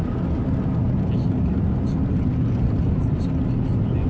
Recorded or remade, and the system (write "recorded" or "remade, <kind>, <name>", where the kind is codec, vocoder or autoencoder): recorded